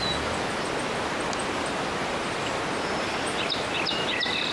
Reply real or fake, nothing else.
real